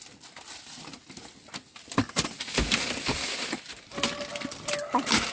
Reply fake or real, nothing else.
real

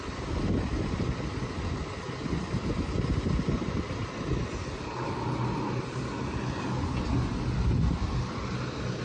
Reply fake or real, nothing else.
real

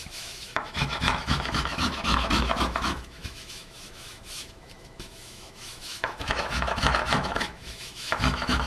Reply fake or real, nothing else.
fake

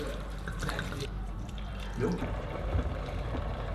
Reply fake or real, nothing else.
fake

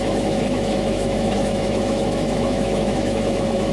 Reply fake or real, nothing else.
fake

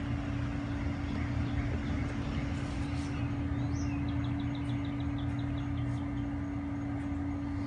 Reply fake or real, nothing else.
real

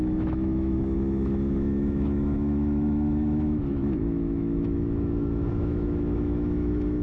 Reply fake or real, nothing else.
fake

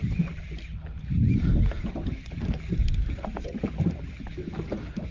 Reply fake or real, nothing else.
real